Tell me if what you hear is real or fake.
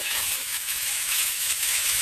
fake